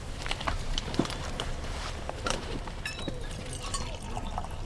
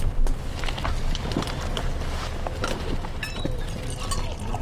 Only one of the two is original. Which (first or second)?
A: second